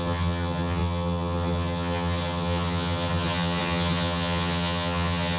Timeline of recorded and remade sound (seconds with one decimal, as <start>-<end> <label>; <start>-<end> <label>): 0.0-5.4 remade